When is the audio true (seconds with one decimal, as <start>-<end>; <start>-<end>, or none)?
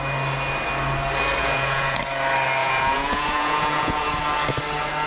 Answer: 0.0-1.4; 2.0-2.6; 4.1-5.1